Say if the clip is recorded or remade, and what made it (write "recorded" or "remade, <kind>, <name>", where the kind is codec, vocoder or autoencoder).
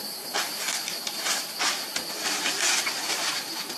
recorded